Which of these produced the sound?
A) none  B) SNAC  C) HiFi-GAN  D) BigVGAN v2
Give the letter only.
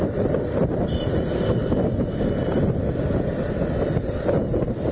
A